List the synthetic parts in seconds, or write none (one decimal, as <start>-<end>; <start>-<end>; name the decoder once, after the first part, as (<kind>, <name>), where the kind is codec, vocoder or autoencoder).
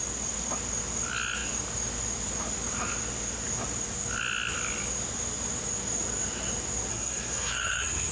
6.9-8.1 (codec, SNAC)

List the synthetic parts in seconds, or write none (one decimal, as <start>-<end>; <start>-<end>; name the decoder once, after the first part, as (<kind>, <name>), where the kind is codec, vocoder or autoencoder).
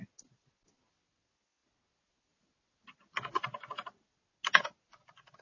none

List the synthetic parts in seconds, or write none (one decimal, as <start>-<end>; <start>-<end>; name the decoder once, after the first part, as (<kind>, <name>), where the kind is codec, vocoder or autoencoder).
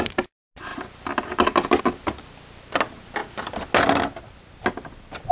none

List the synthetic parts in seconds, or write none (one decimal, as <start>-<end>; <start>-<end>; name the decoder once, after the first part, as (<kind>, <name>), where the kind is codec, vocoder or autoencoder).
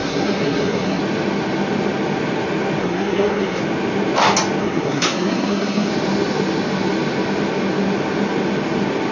0.0-1.0 (codec, SNAC); 2.8-3.6; 4.6-5.9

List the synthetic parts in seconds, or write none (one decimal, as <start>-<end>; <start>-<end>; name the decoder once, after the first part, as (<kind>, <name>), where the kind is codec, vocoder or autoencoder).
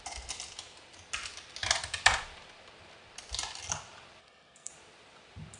4.2-4.7 (codec, SNAC)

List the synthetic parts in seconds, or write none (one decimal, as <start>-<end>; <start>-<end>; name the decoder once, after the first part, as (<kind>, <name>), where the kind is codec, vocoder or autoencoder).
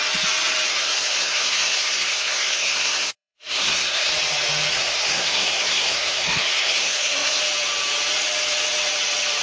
0.7-4.1 (codec, SNAC); 4.7-7.4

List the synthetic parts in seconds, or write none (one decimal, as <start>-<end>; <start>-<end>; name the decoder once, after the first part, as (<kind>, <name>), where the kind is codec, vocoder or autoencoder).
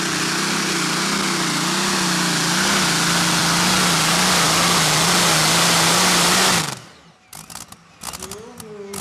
none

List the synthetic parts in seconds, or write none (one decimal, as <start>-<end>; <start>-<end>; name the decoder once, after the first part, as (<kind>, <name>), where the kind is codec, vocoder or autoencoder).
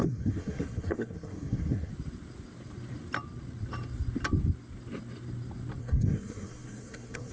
0.0-1.9 (codec, SNAC); 5.8-7.3